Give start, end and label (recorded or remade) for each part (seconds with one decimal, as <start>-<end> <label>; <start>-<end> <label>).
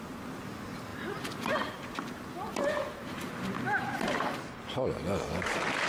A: 0.0-5.9 recorded